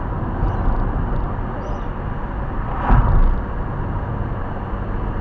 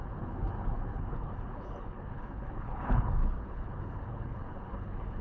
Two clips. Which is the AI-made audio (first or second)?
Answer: second